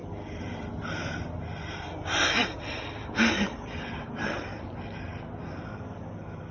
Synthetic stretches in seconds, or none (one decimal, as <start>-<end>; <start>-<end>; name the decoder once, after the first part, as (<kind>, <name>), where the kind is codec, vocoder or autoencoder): none